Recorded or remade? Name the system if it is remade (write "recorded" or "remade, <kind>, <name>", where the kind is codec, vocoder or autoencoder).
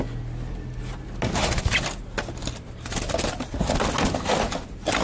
recorded